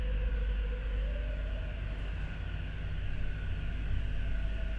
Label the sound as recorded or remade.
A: recorded